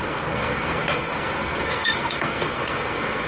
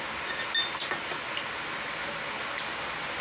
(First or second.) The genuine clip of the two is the second